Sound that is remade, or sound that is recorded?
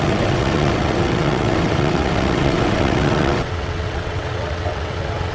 remade